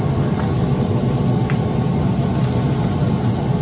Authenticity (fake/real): real